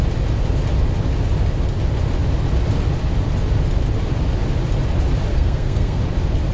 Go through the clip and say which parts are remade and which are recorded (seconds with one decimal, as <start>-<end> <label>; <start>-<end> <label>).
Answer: 0.0-5.3 recorded; 5.3-6.0 remade; 6.0-6.5 recorded